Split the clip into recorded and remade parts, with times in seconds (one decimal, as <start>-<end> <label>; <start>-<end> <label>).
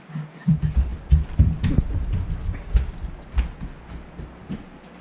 0.0-5.0 recorded